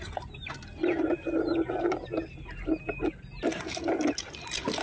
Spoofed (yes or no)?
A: no